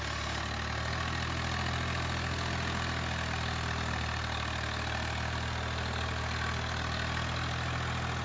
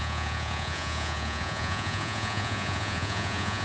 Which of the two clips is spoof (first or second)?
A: second